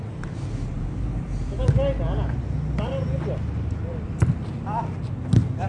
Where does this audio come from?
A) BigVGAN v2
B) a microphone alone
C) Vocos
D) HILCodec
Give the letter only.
B